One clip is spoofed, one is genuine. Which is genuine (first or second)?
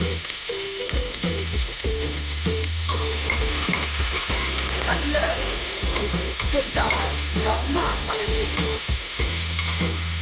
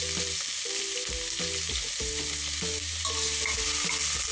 second